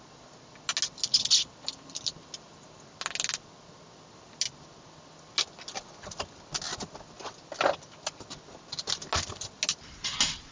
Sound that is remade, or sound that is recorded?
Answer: recorded